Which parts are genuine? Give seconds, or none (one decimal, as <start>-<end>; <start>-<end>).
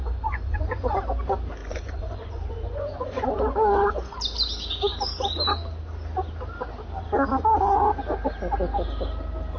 1.0-1.6; 4.2-9.6